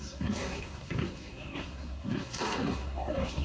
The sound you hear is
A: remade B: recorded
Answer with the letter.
A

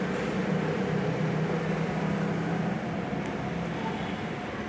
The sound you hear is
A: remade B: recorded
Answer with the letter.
B